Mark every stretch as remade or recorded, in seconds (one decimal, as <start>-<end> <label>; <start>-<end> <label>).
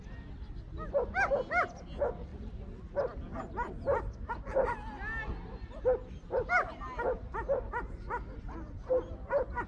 0.0-9.7 recorded